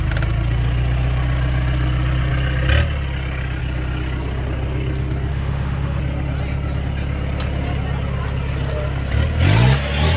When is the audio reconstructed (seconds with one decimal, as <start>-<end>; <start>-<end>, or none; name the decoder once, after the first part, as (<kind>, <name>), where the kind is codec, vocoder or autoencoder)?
5.3-6.0 (autoencoder, DAC-VAE)